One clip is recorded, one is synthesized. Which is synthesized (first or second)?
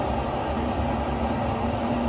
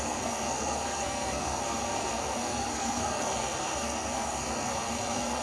second